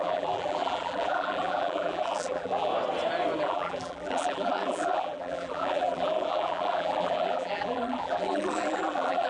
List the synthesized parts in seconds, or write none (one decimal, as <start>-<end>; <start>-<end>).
0.0-2.7; 3.4-9.3